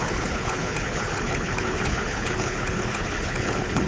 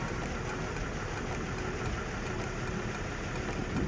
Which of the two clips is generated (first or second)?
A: first